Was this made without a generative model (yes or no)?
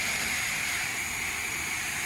yes